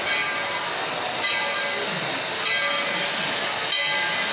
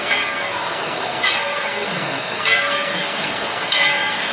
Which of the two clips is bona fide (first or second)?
first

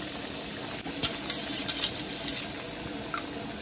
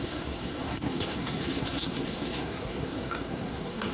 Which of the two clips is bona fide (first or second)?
first